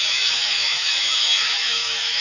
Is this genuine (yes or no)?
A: no